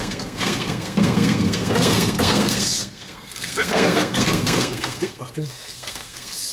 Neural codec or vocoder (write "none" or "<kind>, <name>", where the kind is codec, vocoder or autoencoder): codec, SNAC